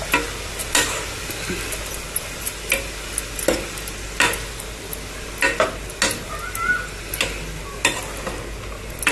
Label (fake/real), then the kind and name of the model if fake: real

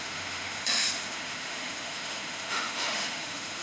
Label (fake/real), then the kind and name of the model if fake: fake, autoencoder, DAC-VAE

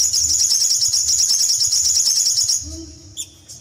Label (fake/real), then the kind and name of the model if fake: real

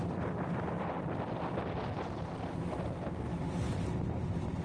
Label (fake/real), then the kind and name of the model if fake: real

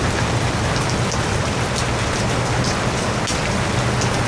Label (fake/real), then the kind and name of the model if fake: real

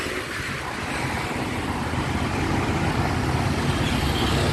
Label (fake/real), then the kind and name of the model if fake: real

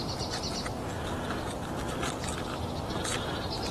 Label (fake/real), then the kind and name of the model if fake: real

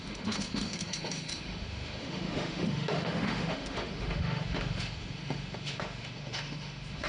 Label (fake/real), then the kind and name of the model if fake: fake, autoencoder, DAC-VAE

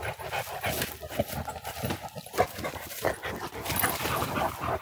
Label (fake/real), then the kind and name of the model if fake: real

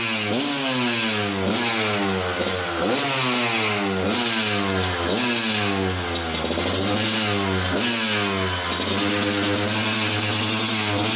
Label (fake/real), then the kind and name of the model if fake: real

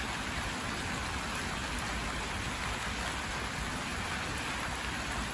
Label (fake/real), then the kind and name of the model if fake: real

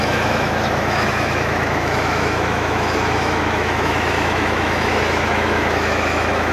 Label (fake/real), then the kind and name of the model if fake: fake, autoencoder, DAC-VAE